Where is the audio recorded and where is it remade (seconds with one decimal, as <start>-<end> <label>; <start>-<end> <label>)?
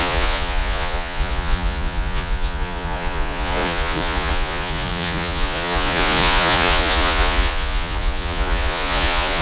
0.0-9.4 remade